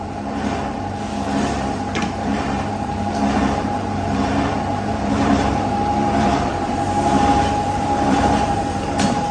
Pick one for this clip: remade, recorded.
remade